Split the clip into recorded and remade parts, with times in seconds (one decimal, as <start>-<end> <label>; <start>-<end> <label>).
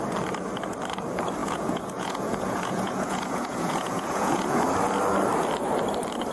0.0-1.4 recorded; 1.4-4.6 remade; 4.6-6.3 recorded